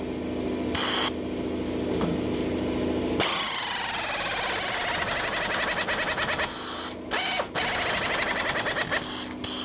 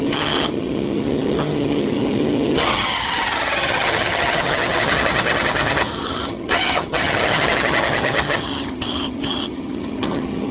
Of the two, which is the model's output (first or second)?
second